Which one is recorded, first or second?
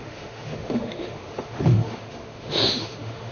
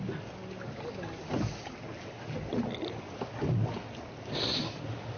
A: second